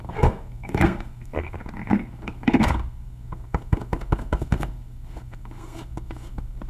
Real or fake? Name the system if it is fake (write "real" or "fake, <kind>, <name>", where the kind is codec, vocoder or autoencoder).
fake, codec, SNAC